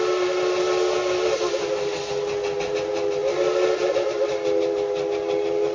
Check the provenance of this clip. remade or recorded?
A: recorded